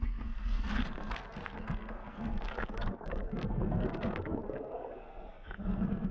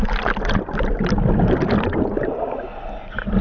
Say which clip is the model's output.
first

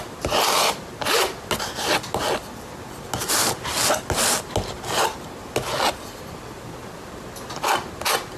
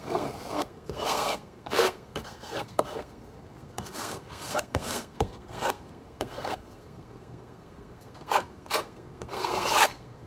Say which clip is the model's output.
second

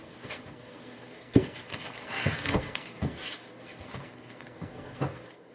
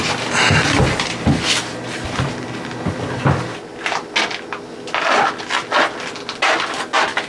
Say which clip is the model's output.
first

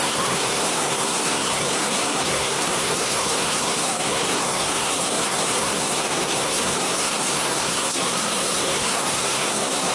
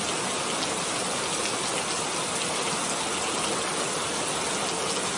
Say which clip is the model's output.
first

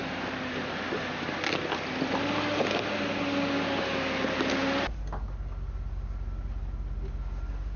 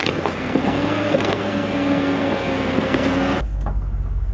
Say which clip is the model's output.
second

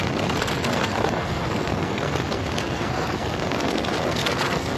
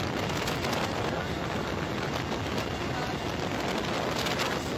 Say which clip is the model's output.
first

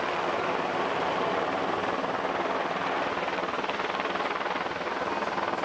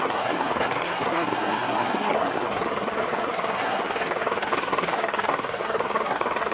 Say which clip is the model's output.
second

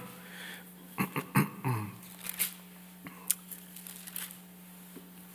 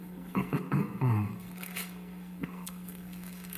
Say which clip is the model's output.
second